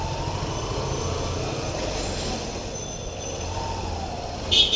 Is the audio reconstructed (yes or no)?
no